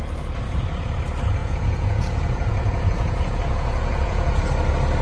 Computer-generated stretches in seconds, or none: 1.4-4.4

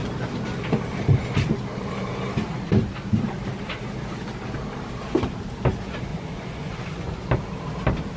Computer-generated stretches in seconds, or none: 6.1-7.3

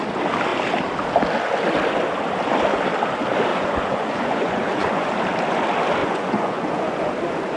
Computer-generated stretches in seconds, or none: 3.5-5.1; 6.0-7.1

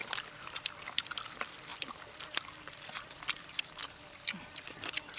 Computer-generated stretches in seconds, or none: none

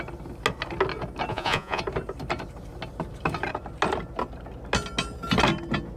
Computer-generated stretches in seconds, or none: 1.3-1.8

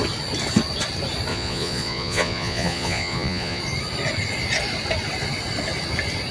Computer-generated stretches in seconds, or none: 1.3-3.6

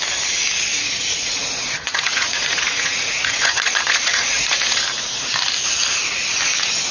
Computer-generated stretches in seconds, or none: 0.7-4.8

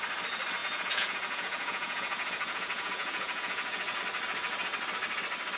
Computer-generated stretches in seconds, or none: 0.6-4.0